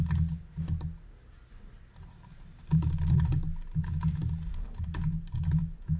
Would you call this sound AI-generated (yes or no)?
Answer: no